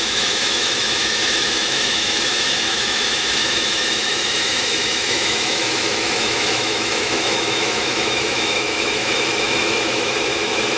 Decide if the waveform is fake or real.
fake